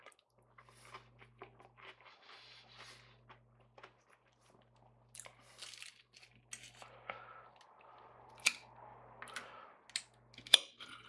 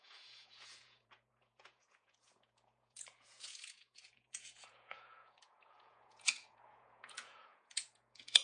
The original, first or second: first